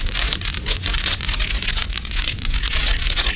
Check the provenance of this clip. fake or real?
fake